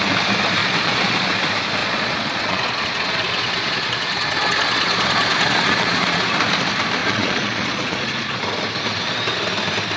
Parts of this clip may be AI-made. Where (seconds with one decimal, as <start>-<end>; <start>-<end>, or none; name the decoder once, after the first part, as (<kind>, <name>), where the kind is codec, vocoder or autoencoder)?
0.6-1.3 (vocoder, Vocos); 1.8-6.3; 7.0-8.4